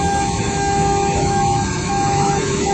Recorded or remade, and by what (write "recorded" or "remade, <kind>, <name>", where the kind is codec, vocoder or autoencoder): remade, autoencoder, DAC-VAE